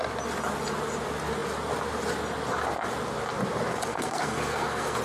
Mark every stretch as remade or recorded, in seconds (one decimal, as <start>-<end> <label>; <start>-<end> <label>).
0.0-3.9 recorded; 3.9-5.0 remade